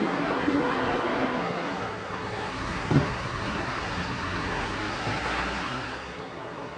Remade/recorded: remade